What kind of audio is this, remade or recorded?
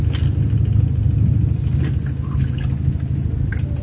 recorded